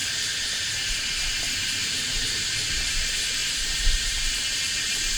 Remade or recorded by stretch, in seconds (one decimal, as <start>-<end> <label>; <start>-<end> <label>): 0.0-5.2 remade